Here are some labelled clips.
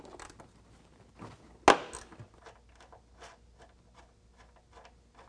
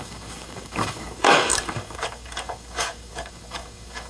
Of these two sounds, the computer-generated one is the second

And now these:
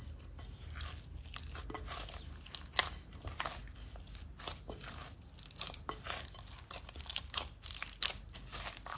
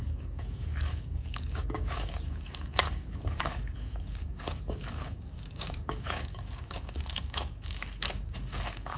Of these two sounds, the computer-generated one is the second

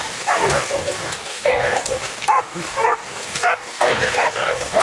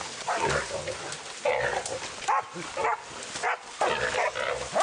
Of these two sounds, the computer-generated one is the first